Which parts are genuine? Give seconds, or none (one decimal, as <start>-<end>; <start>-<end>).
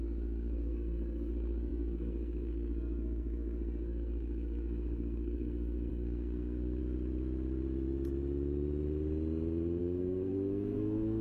6.8-9.8